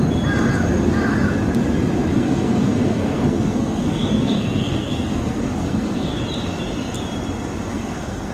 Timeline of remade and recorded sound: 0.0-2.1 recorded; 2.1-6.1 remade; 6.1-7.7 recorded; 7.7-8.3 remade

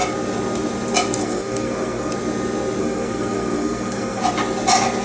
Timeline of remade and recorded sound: 0.0-1.2 recorded; 1.2-2.1 remade; 2.1-2.8 recorded; 2.8-4.2 remade; 4.2-5.0 recorded